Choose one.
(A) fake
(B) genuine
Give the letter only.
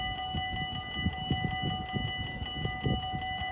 B